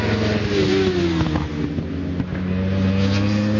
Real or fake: real